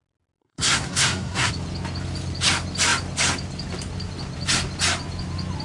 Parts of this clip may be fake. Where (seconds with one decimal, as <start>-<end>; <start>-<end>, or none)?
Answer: 0.4-1.5